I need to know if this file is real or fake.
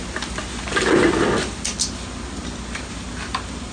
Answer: real